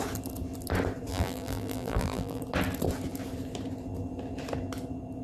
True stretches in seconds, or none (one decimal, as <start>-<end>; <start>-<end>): 0.0-1.1; 2.4-5.2